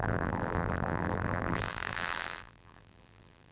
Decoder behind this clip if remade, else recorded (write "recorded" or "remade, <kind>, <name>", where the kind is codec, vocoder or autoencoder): remade, vocoder, BigVGAN v2